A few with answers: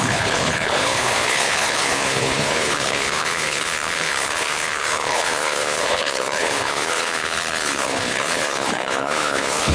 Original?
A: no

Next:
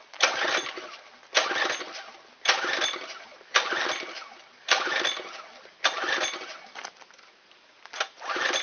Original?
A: yes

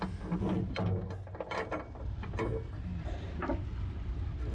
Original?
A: yes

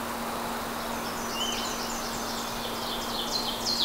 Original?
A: yes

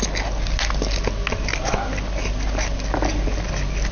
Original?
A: yes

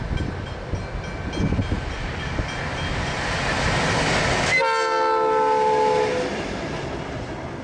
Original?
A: yes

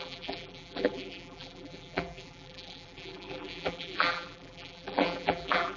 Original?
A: no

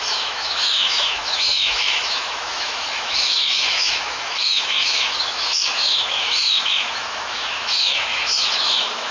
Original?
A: no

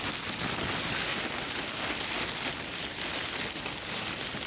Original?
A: yes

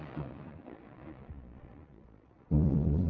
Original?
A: no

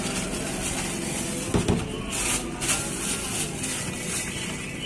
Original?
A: yes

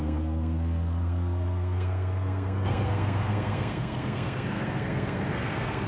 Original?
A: no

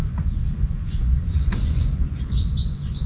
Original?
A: no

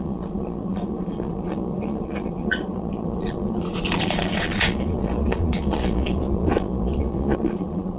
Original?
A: no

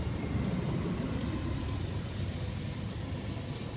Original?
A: no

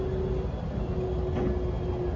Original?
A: yes